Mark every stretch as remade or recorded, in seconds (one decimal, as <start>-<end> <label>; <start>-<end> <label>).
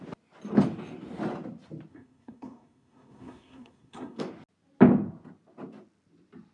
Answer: 0.0-1.9 recorded; 1.9-4.2 remade; 4.2-6.5 recorded